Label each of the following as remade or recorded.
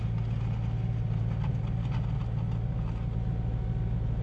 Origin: recorded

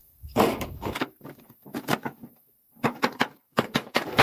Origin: remade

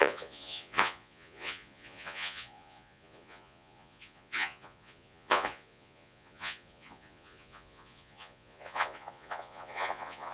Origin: remade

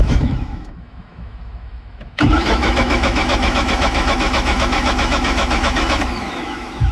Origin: remade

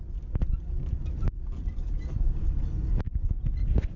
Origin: recorded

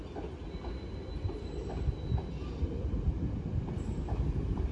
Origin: recorded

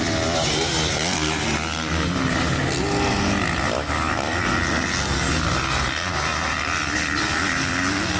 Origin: recorded